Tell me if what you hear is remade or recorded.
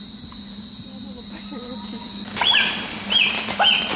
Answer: recorded